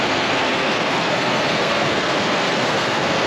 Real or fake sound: fake